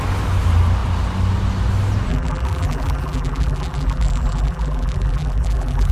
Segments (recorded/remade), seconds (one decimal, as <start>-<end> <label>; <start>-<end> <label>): 0.0-2.1 recorded; 2.1-5.9 remade

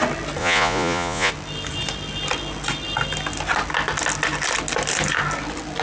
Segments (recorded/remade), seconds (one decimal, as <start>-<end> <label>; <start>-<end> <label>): 0.0-0.4 recorded; 0.4-1.3 remade; 1.3-5.8 recorded

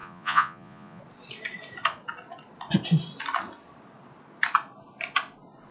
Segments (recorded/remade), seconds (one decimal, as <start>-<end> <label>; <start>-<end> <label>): 0.0-1.0 remade; 1.0-5.7 recorded

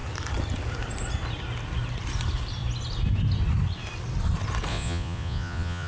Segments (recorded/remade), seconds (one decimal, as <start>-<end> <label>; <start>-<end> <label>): 0.0-4.7 recorded; 4.7-5.9 remade